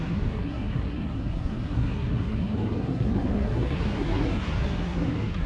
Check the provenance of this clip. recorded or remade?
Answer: remade